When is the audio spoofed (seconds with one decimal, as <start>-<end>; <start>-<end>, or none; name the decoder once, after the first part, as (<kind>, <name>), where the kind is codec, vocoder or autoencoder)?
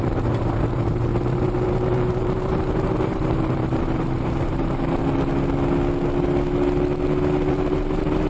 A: 0.0-5.0 (vocoder, BigVGAN v2); 7.5-8.3